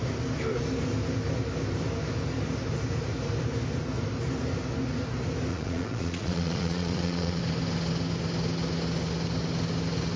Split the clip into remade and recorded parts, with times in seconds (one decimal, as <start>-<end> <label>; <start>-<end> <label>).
0.0-5.5 recorded; 5.5-7.4 remade; 7.4-10.2 recorded